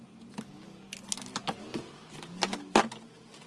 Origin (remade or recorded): recorded